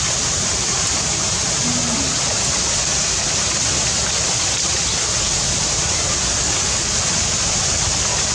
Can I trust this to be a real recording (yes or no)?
yes